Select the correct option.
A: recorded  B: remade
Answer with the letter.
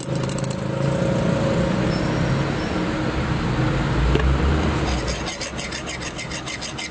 A